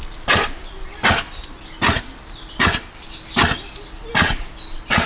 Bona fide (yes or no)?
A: yes